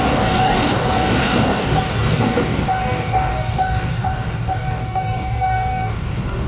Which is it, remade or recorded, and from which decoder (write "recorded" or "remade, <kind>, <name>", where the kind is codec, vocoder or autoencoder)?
remade, codec, DAC